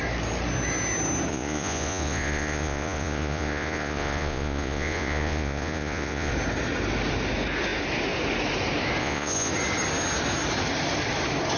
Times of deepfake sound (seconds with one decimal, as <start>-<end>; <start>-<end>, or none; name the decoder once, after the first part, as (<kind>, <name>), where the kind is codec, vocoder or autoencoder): 1.3-6.3 (vocoder, Vocos); 9.0-9.5